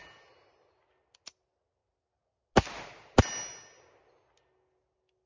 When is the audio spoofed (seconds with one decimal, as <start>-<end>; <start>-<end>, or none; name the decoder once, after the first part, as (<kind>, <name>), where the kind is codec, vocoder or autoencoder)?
none